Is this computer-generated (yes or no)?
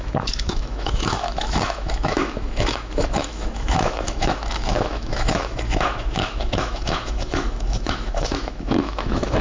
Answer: yes